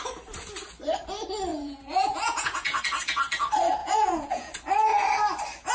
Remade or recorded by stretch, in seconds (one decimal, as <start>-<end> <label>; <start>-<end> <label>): 0.0-1.5 recorded; 1.5-2.8 remade; 2.8-3.8 recorded; 3.8-4.5 remade; 4.5-5.7 recorded